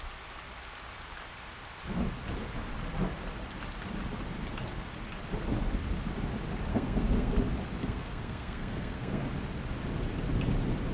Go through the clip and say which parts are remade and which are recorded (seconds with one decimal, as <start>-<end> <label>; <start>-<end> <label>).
0.0-6.7 recorded; 6.7-7.3 remade; 7.3-7.8 recorded; 7.8-9.3 remade; 9.3-10.9 recorded